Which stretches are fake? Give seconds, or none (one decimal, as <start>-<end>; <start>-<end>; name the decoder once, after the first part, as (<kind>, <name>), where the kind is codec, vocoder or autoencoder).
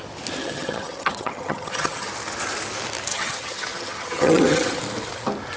0.4-2.1 (vocoder, HiFi-GAN); 3.1-4.8